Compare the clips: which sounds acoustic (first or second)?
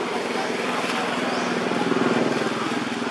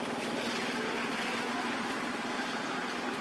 first